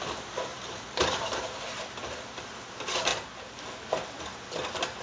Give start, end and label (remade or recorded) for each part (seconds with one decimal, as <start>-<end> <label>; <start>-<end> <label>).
0.0-0.5 recorded; 0.5-2.0 remade; 2.0-5.0 recorded